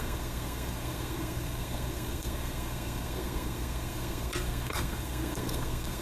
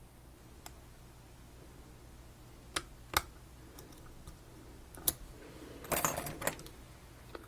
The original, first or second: second